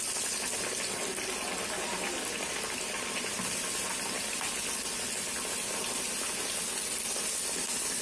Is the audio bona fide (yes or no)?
yes